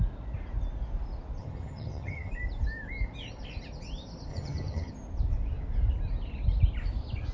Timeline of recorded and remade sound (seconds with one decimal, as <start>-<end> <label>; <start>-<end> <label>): 0.0-1.4 recorded; 1.4-2.3 remade; 2.3-4.3 recorded; 4.3-4.9 remade; 4.9-7.3 recorded

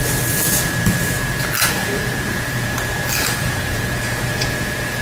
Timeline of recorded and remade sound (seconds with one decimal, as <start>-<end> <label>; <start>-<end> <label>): 0.0-1.8 recorded; 1.8-2.8 remade; 2.8-3.4 recorded; 3.4-5.0 remade

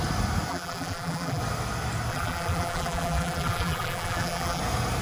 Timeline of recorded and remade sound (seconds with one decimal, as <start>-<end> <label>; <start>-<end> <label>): 0.0-0.5 recorded; 0.5-1.4 remade; 1.4-2.1 recorded; 2.1-4.6 remade; 4.6-5.0 recorded

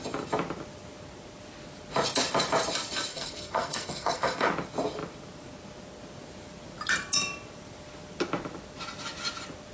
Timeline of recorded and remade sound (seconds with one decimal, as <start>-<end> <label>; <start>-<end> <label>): 0.0-3.1 recorded; 3.1-4.5 remade; 4.5-9.7 recorded

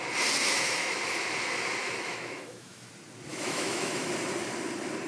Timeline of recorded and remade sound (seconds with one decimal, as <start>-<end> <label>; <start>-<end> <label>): 0.0-0.4 recorded; 0.4-1.1 remade; 1.1-1.8 recorded; 1.8-2.9 remade; 2.9-3.3 recorded; 3.3-4.1 remade; 4.1-5.1 recorded